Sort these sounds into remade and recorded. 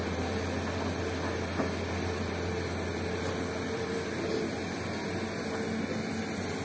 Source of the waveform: recorded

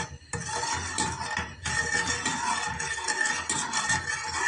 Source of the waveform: recorded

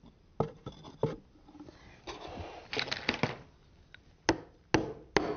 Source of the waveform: recorded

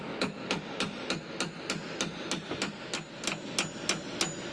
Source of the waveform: recorded